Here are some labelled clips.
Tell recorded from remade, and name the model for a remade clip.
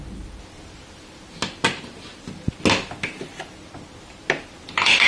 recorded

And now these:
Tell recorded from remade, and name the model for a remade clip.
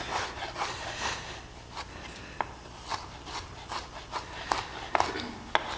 recorded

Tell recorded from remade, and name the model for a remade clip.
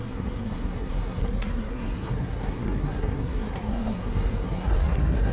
remade, codec, SNAC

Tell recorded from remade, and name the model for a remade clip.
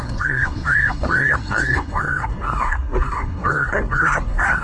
remade, codec, SNAC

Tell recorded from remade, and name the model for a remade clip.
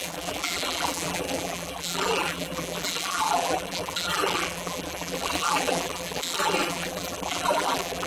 remade, vocoder, BigVGAN v2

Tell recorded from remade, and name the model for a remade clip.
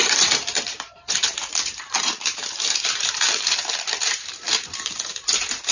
remade, vocoder, BigVGAN v2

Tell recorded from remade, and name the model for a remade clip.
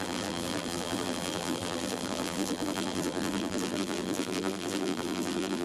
remade, vocoder, BigVGAN v2